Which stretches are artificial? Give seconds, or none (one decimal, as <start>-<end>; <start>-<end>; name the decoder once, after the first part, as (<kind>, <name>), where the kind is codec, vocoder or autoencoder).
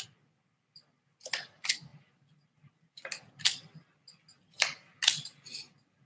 none